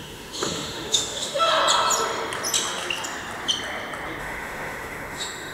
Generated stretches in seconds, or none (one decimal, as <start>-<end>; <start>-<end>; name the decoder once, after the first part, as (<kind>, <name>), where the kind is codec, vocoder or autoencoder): 0.0-1.6 (autoencoder, DAC-VAE); 4.2-5.5